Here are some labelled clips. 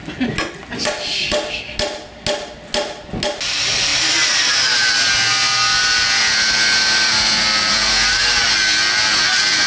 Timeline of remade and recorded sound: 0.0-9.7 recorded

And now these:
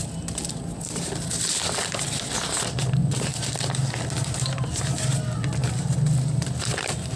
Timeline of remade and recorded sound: 0.0-7.2 recorded

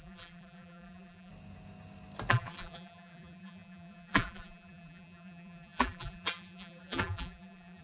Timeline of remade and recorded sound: 0.0-1.3 remade; 1.3-2.3 recorded; 2.3-7.8 remade

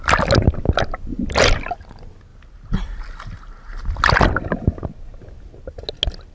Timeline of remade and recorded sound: 0.0-6.3 recorded

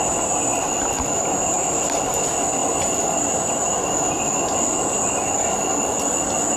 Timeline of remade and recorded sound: 0.0-6.6 recorded

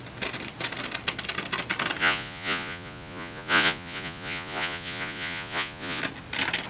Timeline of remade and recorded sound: 0.0-2.0 recorded; 2.0-6.0 remade; 6.0-6.7 recorded

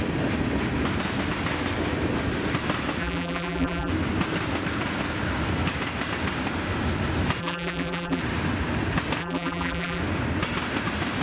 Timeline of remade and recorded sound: 0.0-3.0 recorded; 3.0-3.9 remade; 3.9-7.4 recorded; 7.4-8.2 remade; 8.2-9.2 recorded; 9.2-10.0 remade; 10.0-11.2 recorded

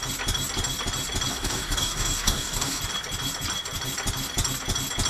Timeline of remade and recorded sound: 0.0-1.3 recorded; 1.3-2.8 remade; 2.8-5.1 recorded